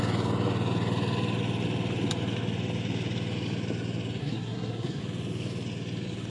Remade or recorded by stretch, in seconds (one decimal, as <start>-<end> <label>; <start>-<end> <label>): 0.0-4.2 recorded; 4.2-5.0 remade; 5.0-6.3 recorded